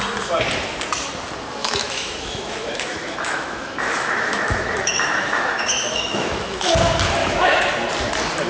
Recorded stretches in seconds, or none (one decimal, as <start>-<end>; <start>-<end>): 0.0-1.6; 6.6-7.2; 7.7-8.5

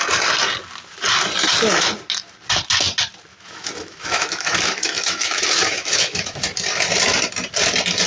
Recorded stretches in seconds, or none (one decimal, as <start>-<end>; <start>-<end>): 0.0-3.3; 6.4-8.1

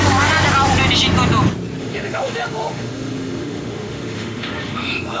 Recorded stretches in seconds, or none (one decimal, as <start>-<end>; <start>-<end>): 0.0-1.8